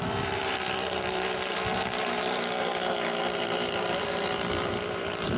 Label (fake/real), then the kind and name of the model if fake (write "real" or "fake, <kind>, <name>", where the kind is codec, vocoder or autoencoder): fake, vocoder, BigVGAN v2